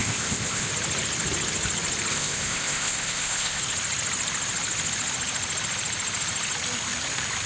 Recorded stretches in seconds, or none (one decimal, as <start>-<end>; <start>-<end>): 0.7-2.1; 3.6-7.5